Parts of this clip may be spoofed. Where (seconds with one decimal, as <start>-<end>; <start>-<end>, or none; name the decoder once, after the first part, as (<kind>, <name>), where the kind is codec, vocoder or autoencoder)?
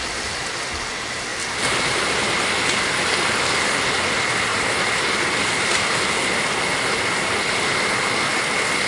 1.3-1.9 (vocoder, BigVGAN v2); 4.5-6.1